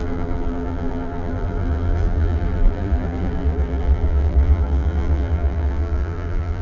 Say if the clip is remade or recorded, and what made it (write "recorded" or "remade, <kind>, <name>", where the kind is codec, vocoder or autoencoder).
remade, vocoder, BigVGAN v2